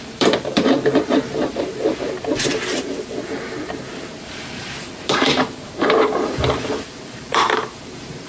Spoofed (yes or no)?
yes